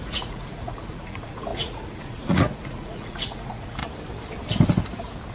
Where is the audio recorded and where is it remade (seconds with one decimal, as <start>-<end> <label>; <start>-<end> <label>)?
0.0-3.8 remade; 3.8-5.3 recorded